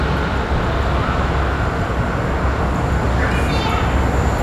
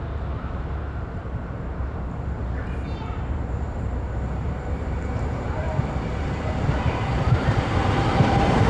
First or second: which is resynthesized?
second